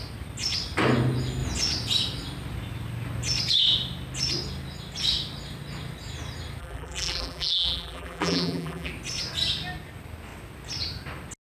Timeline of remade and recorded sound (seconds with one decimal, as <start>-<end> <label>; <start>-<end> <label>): 0.0-6.6 recorded; 6.6-8.9 remade; 8.9-11.5 recorded